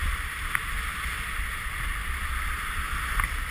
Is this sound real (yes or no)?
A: yes